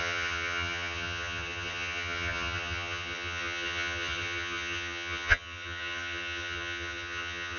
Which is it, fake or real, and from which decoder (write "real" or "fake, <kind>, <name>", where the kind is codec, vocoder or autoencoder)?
fake, vocoder, HiFi-GAN